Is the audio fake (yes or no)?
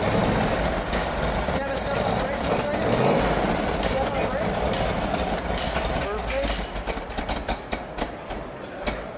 no